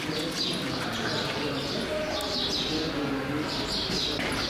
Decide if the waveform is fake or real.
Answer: real